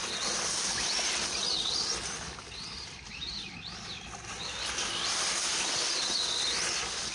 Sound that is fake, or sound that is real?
real